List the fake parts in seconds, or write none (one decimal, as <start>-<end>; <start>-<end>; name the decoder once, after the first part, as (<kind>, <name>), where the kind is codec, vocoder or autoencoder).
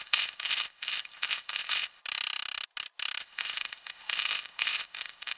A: 0.0-2.0 (codec, ZipCodec); 3.2-5.4